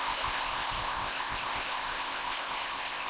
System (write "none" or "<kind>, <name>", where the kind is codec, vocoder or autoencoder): codec, ZipCodec